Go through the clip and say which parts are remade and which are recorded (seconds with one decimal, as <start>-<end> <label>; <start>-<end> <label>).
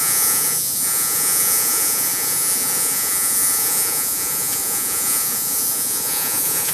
0.0-6.7 remade